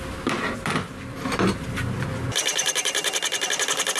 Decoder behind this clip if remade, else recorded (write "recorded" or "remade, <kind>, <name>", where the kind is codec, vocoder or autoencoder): remade, vocoder, BigVGAN v2